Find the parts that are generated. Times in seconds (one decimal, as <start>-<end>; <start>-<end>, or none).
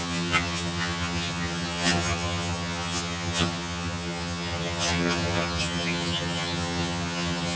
0.0-7.6